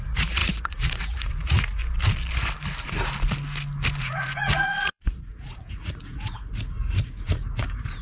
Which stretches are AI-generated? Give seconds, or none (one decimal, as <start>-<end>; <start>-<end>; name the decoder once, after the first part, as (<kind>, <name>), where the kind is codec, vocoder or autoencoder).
0.0-1.8 (vocoder, Vocos); 4.0-8.0

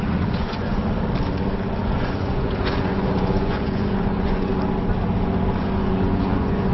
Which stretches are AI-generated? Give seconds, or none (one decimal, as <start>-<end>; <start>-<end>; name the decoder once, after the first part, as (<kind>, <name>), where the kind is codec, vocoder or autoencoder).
0.0-0.8 (vocoder, Vocos); 1.8-4.5; 5.6-6.7

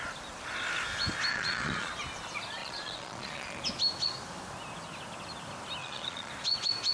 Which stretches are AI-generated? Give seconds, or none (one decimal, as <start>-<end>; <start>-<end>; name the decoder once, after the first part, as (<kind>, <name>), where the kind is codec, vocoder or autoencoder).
1.3-1.9 (vocoder, Vocos); 2.6-3.6; 5.8-6.3

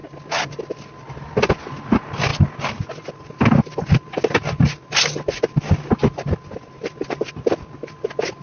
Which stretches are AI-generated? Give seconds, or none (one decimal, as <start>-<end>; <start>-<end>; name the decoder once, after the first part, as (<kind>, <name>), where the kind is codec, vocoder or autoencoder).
none